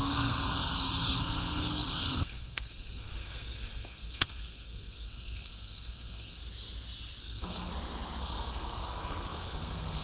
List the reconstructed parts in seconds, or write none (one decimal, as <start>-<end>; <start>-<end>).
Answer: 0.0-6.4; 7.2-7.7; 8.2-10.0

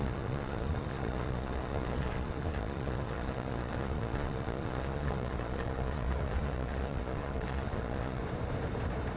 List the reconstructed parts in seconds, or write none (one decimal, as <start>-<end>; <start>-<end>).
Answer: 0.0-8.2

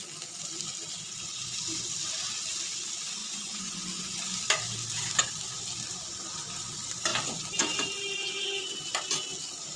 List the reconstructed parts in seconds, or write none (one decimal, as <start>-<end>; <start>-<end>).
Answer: 3.2-3.8